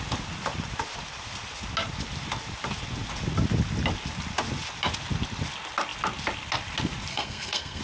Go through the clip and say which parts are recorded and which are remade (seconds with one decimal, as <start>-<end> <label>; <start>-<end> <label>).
0.0-7.1 recorded; 7.1-7.8 remade